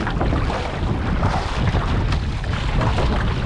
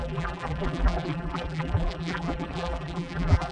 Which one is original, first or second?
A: first